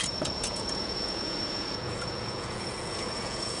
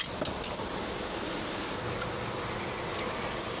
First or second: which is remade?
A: first